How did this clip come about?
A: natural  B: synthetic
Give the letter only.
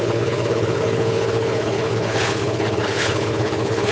B